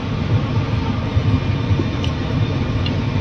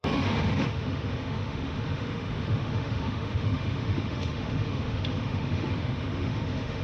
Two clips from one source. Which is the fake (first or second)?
second